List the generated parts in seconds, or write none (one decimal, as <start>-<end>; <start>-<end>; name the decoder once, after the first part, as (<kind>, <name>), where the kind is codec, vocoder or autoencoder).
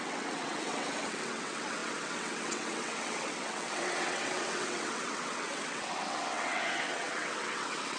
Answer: 0.0-8.0 (vocoder, WaveNeXt)